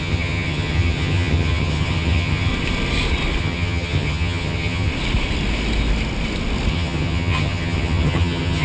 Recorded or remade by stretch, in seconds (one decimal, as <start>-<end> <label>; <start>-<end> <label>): 0.0-2.5 remade; 2.5-3.4 recorded; 3.4-4.9 remade; 4.9-6.7 recorded; 6.7-8.6 remade